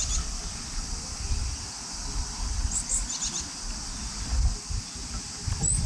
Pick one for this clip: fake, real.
real